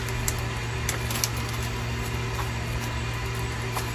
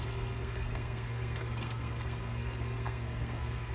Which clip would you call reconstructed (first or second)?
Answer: second